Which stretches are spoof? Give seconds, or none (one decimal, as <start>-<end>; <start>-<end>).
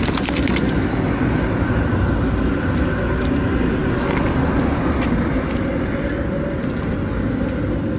none